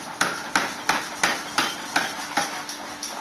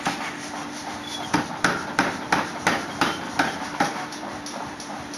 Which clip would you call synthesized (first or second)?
second